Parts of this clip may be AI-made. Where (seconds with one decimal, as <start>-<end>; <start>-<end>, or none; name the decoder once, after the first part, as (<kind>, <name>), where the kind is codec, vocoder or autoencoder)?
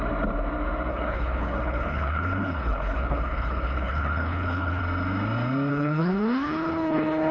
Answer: 0.9-4.8 (codec, HILCodec); 5.7-7.3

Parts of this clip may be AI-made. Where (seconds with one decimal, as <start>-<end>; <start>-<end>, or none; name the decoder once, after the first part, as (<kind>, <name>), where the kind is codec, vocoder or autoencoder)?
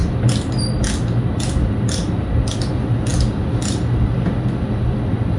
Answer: none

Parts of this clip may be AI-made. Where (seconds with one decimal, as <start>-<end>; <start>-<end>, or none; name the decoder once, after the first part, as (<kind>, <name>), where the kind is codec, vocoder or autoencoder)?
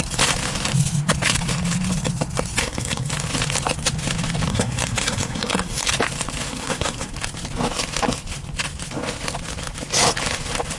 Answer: 2.6-3.1 (codec, SNAC); 4.5-5.9; 6.5-7.1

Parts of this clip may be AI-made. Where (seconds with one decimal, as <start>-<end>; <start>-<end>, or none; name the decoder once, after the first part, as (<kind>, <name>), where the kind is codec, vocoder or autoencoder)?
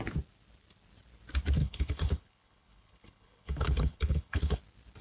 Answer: 1.6-4.6 (codec, HILCodec)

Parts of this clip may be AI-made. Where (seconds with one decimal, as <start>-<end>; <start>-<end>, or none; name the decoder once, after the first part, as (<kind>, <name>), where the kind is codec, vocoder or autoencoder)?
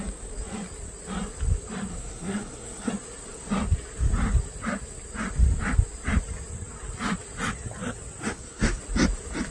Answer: 1.9-2.9 (codec, SNAC); 8.2-8.8